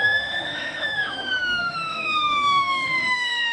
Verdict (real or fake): fake